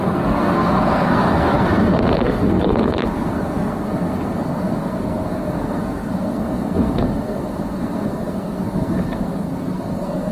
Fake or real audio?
fake